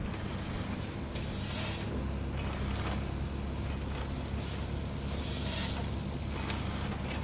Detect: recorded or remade recorded